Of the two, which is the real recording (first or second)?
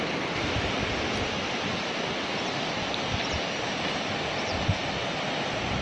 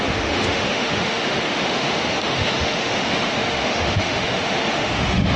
first